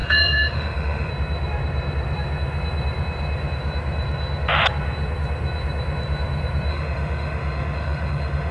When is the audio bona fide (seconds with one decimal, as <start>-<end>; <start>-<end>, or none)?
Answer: 1.1-6.7